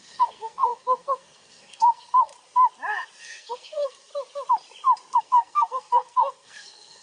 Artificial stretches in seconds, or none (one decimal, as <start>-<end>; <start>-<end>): 0.0-2.3; 3.2-4.1; 5.2-7.0